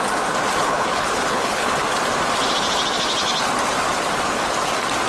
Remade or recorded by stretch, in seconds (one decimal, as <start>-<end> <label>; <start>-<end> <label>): 0.0-0.6 recorded; 0.6-1.8 remade; 1.8-5.1 recorded